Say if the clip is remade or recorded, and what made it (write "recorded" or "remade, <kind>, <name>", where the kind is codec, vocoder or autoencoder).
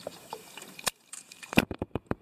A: remade, vocoder, BigVGAN v2